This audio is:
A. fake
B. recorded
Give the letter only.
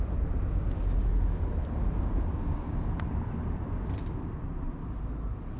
B